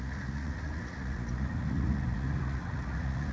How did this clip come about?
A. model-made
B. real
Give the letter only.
A